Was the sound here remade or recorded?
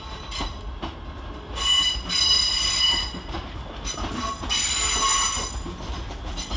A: recorded